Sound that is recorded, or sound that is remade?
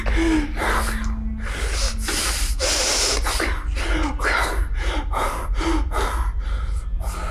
recorded